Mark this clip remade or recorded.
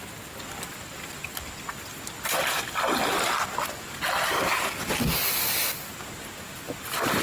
recorded